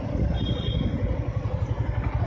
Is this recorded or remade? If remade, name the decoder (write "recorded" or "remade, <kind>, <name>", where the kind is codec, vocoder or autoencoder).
recorded